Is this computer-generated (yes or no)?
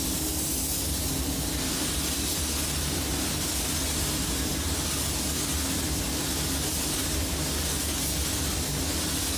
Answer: no